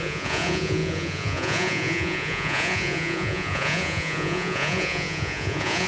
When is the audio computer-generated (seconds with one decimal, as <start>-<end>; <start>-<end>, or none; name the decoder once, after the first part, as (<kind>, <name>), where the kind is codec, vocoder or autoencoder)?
0.0-5.9 (vocoder, Vocos)